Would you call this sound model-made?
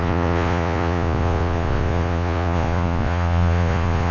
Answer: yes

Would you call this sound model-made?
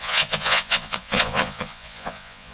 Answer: yes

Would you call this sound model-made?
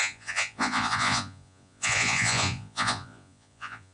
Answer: yes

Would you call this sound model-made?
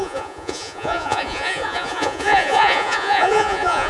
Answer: yes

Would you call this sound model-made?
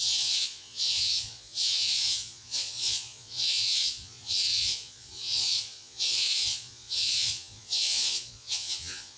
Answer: yes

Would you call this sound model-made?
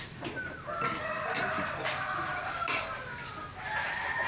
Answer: no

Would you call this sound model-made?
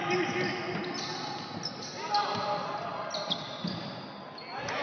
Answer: no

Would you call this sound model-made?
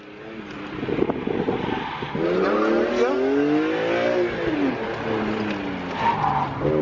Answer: no